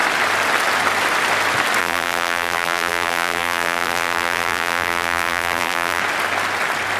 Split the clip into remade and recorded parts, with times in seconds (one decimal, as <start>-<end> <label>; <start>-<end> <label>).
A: 0.0-1.8 recorded; 1.8-6.0 remade; 6.0-7.0 recorded